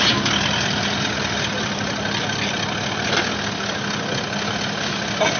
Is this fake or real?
real